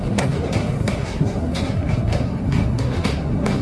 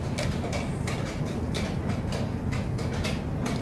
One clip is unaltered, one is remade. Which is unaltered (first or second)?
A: second